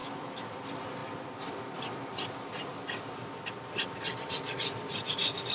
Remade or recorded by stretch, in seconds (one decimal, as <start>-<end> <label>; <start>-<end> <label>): 0.0-0.5 remade; 0.5-5.5 recorded